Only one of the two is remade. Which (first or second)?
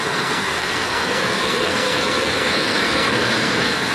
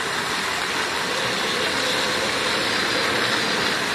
first